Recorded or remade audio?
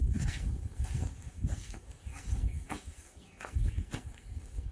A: remade